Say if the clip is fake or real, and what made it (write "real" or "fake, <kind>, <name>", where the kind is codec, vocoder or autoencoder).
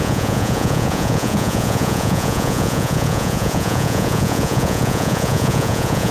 fake, vocoder, Vocos